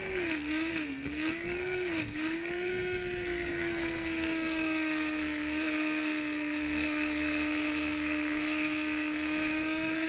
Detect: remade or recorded remade